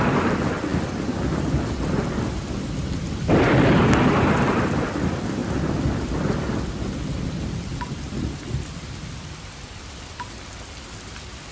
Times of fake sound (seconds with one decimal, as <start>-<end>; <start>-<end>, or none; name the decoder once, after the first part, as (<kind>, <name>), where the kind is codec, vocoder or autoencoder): none